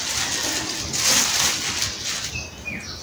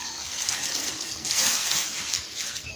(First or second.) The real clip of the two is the first